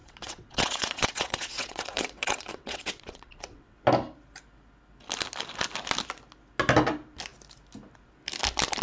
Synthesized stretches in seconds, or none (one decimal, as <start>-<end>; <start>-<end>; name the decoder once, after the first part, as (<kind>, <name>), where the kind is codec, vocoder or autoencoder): 0.0-3.8 (vocoder, WaveNeXt)